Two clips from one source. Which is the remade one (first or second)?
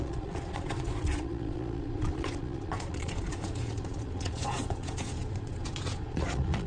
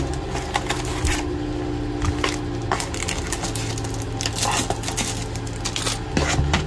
first